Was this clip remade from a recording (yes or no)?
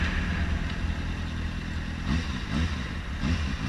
no